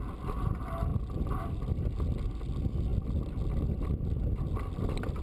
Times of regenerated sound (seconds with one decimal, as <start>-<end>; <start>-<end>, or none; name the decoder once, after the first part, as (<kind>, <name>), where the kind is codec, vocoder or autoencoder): 0.9-1.7 (vocoder, BigVGAN v2)